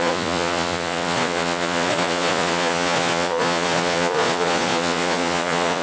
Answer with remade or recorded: remade